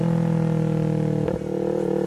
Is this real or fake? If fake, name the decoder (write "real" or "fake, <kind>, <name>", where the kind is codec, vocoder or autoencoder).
real